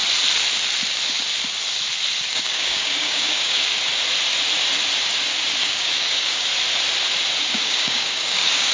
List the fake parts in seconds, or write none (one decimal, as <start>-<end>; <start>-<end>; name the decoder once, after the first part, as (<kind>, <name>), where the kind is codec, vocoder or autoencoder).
2.3-3.8 (codec, DAC); 5.6-6.5; 7.4-8.7